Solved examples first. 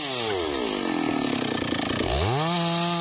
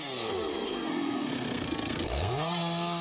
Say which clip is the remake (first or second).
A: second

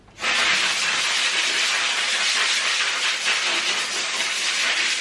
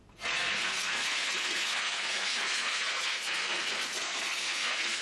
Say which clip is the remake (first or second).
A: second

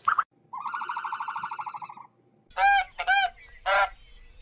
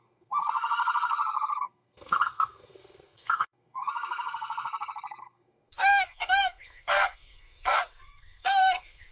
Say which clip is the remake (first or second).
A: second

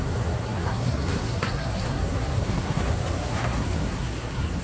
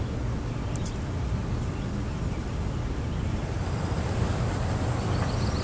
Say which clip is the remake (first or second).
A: first